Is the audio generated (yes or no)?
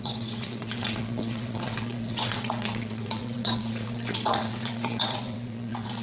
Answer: yes